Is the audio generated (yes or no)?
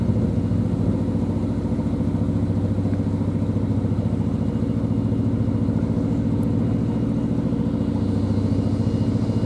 no